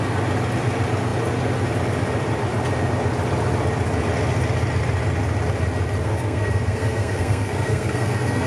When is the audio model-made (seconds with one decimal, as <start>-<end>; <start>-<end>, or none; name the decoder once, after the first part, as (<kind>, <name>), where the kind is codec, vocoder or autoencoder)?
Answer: 6.0-8.5 (codec, SNAC)